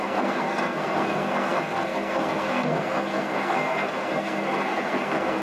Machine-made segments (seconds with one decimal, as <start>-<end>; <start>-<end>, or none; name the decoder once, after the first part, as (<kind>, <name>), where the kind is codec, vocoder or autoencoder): 0.0-5.4 (codec, SNAC)